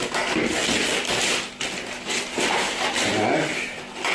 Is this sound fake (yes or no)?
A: no